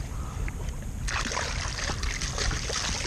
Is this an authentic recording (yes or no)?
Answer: yes